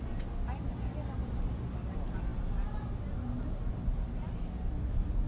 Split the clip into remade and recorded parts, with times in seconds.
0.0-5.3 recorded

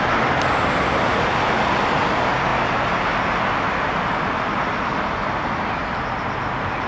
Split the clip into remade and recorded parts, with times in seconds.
0.0-6.9 recorded

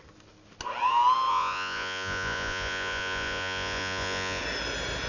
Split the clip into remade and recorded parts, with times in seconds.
0.0-1.3 recorded; 1.3-4.4 remade; 4.4-5.1 recorded

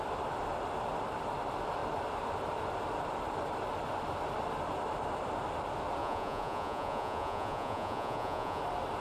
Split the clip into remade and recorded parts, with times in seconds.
0.0-6.0 recorded; 6.0-8.6 remade; 8.6-9.0 recorded